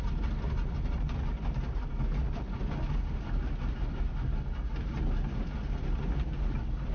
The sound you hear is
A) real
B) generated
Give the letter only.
A